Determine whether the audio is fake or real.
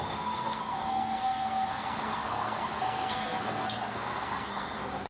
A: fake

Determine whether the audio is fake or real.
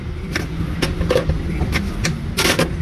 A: real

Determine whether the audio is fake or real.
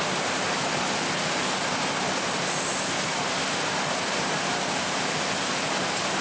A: real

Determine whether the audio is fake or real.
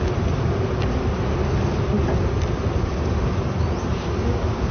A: real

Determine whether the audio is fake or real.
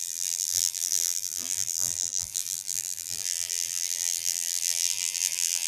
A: fake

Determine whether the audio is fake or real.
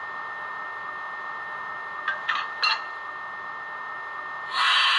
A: real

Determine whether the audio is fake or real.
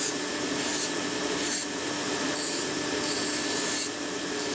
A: real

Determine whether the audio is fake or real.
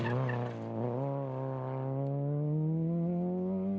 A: real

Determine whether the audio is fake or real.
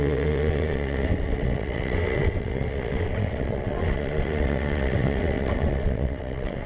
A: fake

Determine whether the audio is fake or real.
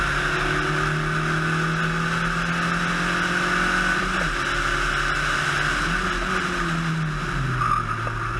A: real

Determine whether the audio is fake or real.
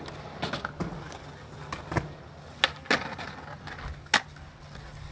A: real